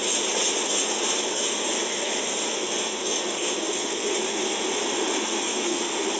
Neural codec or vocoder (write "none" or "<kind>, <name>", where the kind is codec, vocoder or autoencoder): none